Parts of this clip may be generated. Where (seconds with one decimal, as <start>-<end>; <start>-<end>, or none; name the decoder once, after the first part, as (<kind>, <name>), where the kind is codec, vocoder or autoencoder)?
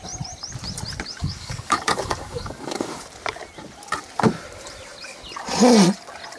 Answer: 1.2-3.0 (codec, DAC)